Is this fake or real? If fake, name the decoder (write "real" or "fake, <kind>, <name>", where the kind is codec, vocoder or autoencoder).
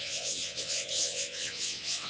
fake, vocoder, WaveNeXt